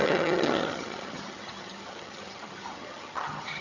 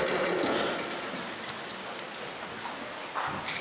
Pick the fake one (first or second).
first